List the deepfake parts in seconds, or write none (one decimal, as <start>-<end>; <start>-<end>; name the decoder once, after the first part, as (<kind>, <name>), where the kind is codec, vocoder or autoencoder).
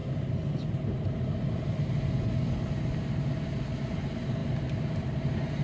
none